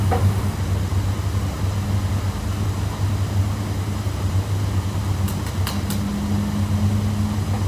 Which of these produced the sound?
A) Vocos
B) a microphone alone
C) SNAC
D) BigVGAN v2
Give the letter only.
B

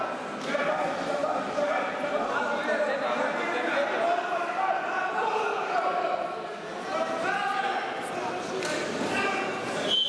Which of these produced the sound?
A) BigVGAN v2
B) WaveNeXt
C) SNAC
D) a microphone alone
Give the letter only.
D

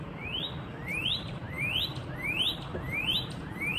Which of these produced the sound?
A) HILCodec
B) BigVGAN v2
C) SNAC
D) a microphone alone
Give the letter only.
D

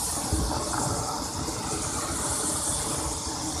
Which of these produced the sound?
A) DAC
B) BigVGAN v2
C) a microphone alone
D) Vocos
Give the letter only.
C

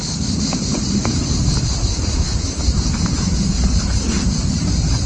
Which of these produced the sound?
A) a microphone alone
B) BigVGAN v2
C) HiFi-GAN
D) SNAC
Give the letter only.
B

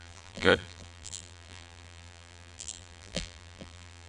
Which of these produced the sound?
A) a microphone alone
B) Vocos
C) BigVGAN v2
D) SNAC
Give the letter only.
C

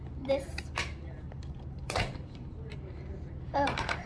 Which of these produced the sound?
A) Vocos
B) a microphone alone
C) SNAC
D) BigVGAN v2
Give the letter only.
D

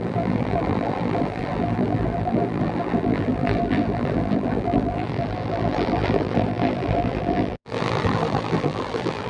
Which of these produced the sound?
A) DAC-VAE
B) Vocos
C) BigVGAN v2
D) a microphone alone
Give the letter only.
C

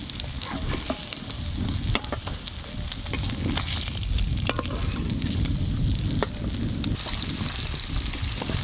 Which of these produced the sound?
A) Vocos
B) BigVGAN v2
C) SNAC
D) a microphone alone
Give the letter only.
D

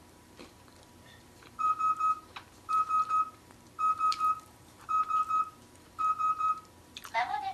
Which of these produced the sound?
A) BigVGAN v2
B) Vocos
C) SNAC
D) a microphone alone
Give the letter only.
A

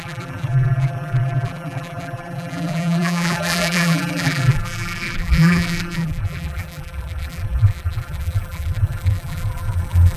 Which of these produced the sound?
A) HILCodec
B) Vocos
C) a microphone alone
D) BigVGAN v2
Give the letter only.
D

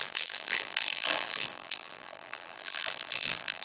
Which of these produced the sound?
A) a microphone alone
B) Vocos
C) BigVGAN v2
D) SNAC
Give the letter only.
C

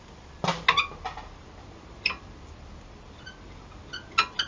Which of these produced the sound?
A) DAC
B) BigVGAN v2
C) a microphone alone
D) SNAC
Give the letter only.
C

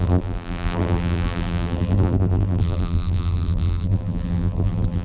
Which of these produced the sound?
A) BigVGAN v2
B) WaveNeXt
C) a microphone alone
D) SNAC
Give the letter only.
A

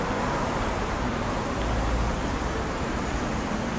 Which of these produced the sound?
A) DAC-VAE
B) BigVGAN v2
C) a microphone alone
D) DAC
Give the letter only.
C